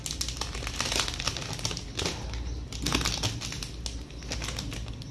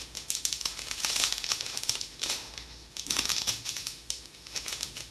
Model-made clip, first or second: second